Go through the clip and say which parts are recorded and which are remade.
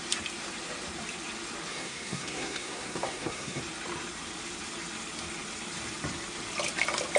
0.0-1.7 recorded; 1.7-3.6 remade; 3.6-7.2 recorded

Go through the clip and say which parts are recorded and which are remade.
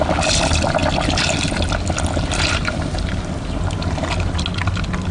0.0-5.1 recorded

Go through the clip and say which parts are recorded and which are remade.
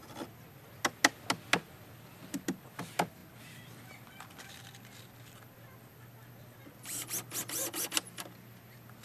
0.0-9.0 recorded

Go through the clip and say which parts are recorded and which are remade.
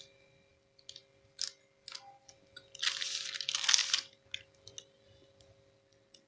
0.0-6.3 recorded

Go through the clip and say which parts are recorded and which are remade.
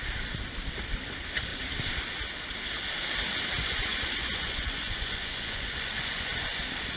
0.0-3.6 recorded; 3.6-6.6 remade; 6.6-7.0 recorded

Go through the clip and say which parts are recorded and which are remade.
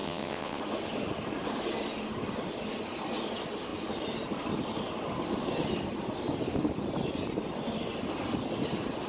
0.0-0.6 remade; 0.6-9.1 recorded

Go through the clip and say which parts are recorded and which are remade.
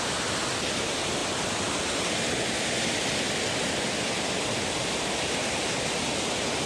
0.0-6.7 recorded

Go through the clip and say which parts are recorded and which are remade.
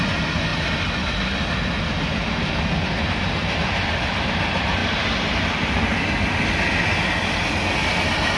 0.0-8.4 recorded